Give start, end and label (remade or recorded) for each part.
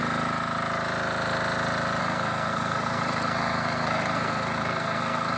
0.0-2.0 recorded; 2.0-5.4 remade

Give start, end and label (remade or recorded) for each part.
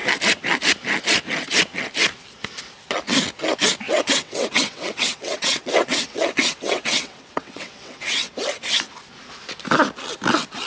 0.0-3.9 recorded; 3.9-8.3 remade; 8.3-10.7 recorded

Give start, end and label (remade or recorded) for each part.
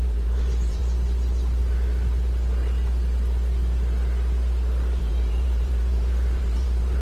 0.0-0.8 remade; 0.8-5.0 recorded; 5.0-7.0 remade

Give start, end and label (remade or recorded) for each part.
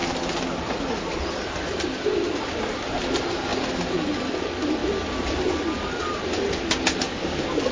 0.0-2.0 remade; 2.0-7.7 recorded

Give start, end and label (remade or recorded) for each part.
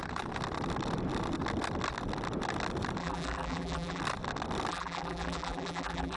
0.0-3.0 recorded; 3.0-4.0 remade; 4.0-4.7 recorded; 4.7-6.2 remade